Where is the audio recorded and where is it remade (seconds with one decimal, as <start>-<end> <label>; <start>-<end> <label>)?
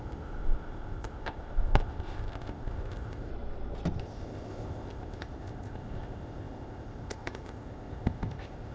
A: 0.0-3.3 remade; 3.3-4.0 recorded; 4.0-8.7 remade